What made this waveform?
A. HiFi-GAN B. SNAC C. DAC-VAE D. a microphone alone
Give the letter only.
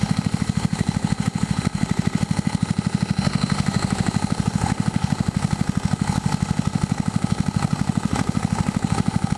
C